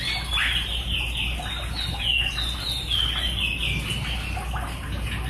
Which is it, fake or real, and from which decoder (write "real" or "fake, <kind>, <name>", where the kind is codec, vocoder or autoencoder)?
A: real